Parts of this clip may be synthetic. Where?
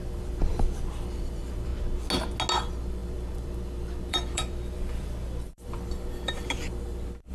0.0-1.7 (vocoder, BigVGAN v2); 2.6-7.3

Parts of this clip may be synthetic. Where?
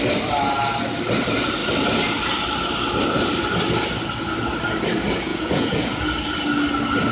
5.3-6.0 (vocoder, Vocos)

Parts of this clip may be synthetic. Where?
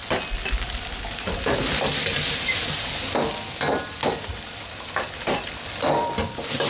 0.5-2.0 (vocoder, BigVGAN v2); 3.3-6.7